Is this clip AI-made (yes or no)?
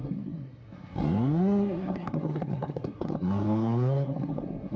yes